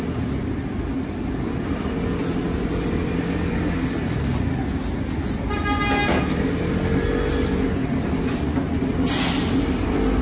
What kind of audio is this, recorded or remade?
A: recorded